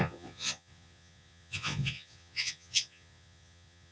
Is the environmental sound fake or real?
fake